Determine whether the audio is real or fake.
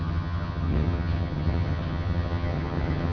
fake